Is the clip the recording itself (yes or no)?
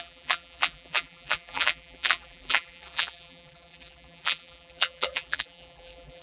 no